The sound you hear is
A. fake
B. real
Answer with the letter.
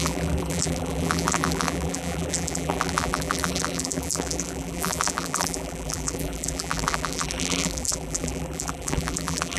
A